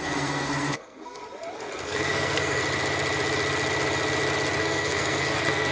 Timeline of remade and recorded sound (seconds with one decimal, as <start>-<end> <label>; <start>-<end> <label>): 0.0-1.2 remade; 1.2-1.8 recorded; 1.8-2.6 remade; 2.6-4.6 recorded; 4.6-5.7 remade